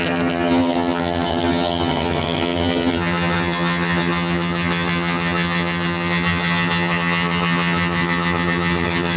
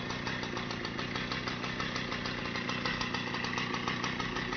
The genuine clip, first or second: second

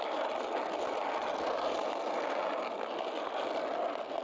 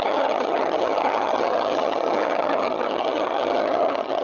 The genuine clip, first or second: first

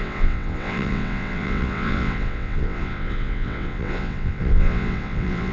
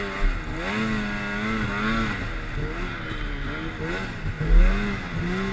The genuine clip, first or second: second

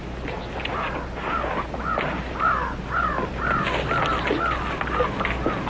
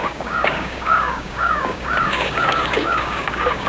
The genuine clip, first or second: first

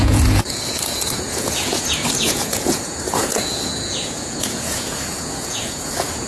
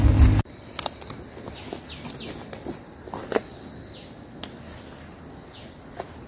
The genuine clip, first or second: second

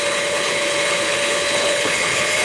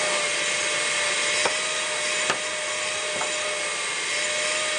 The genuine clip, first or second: second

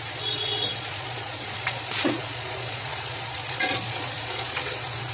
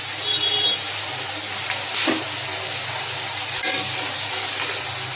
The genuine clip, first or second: second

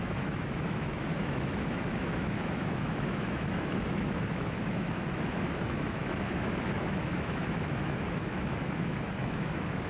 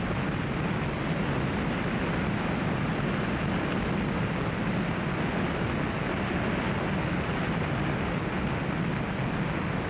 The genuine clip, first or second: second